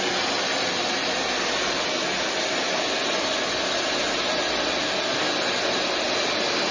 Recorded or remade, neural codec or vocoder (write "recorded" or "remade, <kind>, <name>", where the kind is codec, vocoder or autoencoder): recorded